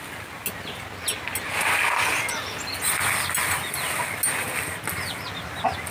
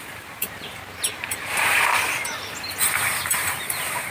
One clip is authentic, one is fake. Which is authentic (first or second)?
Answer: first